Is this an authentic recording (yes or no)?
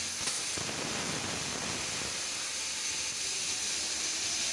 yes